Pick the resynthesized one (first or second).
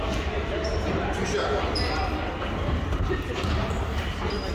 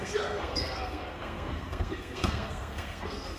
second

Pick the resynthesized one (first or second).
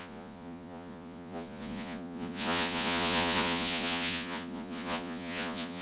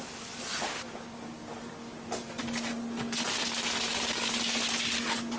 first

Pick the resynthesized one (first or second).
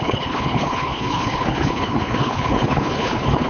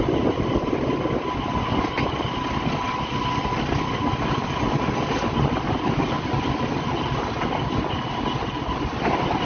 first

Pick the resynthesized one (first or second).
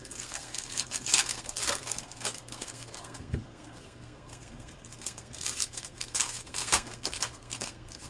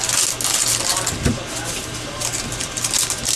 first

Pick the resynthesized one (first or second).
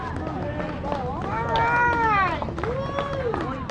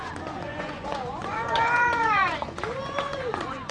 second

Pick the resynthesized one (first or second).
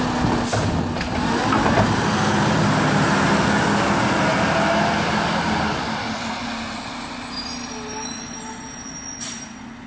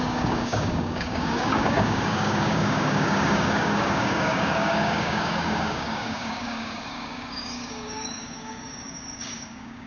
second